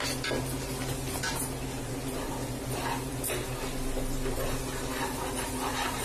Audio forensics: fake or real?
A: real